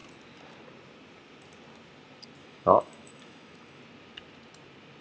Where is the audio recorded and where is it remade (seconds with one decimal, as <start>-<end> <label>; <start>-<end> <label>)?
0.0-2.4 recorded; 2.4-3.8 remade; 3.8-5.0 recorded